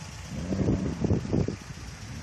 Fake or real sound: real